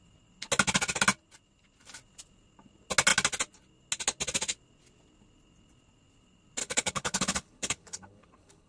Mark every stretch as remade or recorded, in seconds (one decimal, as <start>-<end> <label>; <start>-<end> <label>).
0.0-6.6 recorded; 6.6-8.7 remade